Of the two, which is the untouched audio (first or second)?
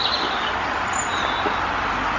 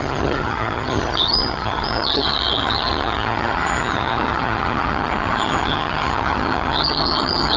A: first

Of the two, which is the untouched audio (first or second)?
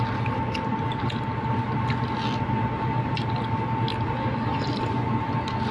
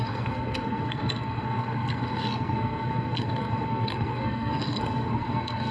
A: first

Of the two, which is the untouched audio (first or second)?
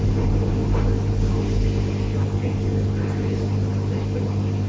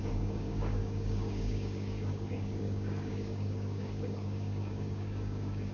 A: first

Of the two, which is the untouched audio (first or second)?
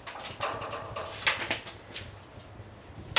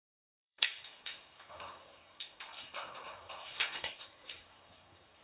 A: first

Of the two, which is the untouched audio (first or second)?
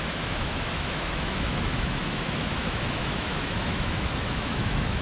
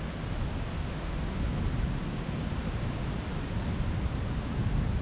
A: second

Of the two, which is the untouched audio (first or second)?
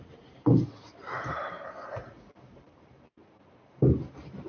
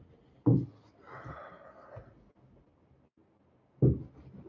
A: second